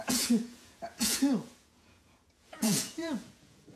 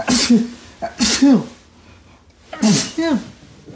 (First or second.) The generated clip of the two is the first